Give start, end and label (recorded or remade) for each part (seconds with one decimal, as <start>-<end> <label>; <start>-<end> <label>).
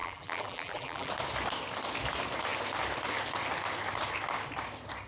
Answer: 0.0-1.1 remade; 1.1-5.1 recorded